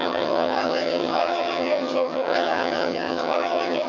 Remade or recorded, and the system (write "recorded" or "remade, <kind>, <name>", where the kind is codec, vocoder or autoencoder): remade, vocoder, HiFi-GAN